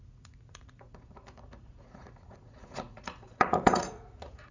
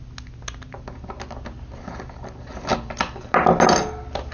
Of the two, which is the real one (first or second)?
second